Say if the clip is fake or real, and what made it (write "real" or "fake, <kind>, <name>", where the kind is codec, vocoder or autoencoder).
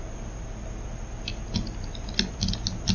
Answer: real